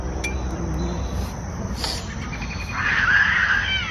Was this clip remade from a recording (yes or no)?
no